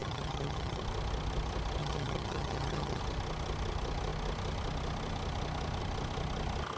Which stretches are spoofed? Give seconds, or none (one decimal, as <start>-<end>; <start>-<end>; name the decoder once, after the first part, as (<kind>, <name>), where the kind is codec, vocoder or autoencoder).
0.0-0.8 (vocoder, HiFi-GAN); 1.8-3.0